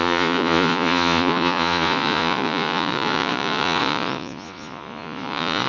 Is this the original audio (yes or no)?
no